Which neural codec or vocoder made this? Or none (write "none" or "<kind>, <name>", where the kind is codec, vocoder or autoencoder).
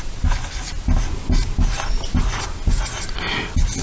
none